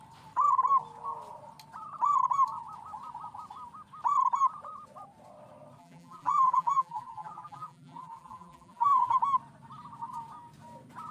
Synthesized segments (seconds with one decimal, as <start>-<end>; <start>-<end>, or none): 5.8-9.2